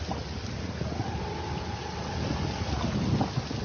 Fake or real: real